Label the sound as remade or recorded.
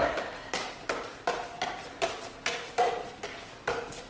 recorded